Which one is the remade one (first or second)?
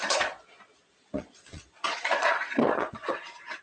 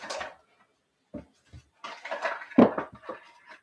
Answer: first